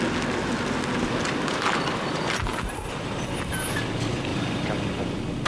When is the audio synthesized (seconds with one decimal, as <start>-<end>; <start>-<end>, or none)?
2.5-3.3; 4.3-5.0